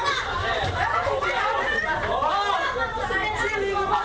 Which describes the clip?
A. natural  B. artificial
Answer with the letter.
A